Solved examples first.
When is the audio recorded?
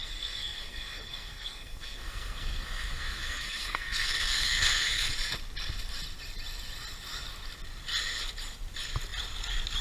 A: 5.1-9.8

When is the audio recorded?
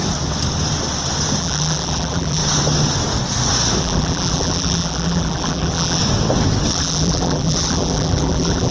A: 0.0-1.4; 2.4-3.8; 6.0-6.7